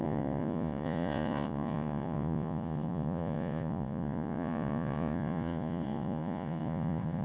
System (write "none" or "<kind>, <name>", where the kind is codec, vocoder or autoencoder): vocoder, Vocos